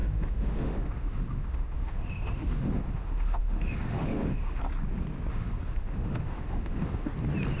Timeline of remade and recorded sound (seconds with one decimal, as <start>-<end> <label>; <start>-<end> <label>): 0.0-4.6 remade; 4.6-5.3 recorded; 5.3-7.1 remade; 7.1-7.6 recorded